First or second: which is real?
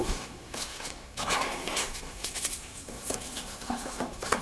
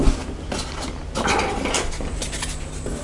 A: second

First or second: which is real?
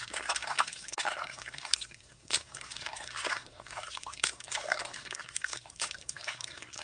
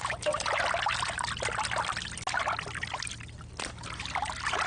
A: second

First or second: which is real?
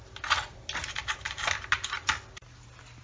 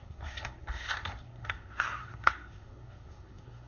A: first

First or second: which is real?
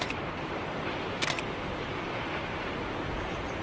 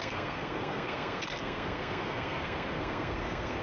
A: first